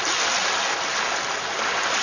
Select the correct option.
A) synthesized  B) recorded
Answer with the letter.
B